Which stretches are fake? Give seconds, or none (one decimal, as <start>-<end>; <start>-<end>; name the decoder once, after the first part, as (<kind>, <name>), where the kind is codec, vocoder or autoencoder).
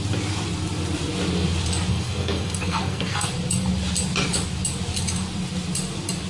1.9-3.3 (codec, SNAC)